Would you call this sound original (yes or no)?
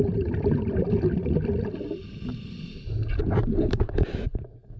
yes